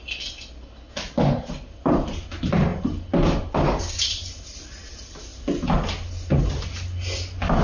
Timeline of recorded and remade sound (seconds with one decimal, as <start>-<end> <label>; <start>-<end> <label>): 0.0-7.6 recorded

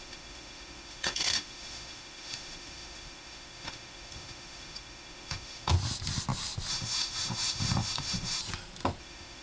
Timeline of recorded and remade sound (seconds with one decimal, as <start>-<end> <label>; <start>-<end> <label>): 0.0-5.7 remade; 5.7-6.7 recorded; 6.7-8.4 remade; 8.4-9.0 recorded; 9.0-9.4 remade